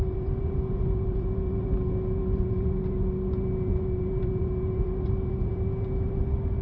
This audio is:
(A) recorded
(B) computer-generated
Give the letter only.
B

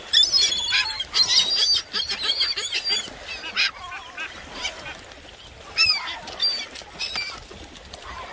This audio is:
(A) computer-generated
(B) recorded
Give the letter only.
B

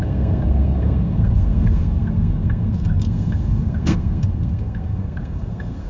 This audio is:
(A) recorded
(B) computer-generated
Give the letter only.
B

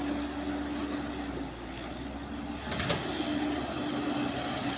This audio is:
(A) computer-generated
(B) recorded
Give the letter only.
B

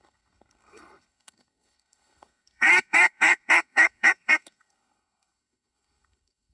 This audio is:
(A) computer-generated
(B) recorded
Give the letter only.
A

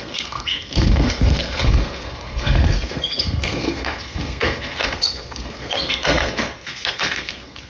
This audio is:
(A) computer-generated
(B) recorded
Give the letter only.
A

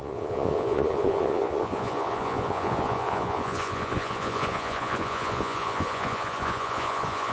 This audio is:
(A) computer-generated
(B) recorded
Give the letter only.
A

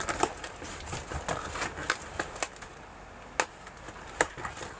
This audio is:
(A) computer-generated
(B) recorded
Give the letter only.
B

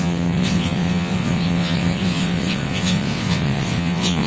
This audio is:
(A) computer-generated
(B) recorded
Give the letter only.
A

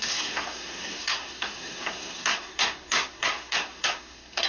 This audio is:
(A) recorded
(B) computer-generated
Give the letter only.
B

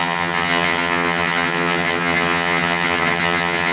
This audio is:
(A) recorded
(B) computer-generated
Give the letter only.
B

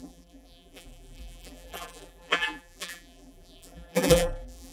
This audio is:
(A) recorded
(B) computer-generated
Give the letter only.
B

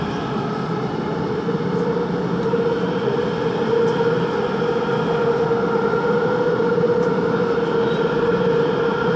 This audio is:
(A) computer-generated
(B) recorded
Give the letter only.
B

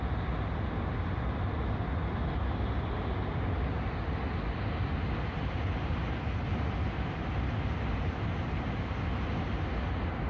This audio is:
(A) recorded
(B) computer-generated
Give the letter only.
A